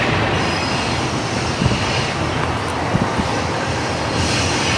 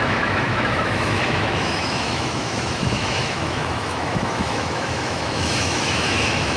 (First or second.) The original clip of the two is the first